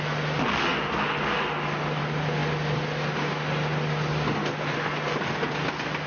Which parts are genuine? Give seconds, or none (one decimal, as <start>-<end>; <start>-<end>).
0.0-6.1